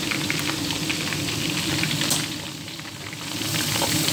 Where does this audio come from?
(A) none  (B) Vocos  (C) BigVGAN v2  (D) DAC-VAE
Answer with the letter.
A